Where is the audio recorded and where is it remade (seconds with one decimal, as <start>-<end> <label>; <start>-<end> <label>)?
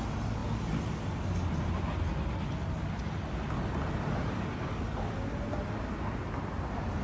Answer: 0.0-7.0 recorded